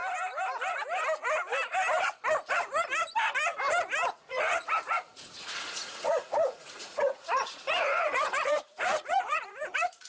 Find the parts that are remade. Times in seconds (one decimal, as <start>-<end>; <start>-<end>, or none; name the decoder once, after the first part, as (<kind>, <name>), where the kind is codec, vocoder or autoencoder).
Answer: 4.1-10.1 (vocoder, Vocos)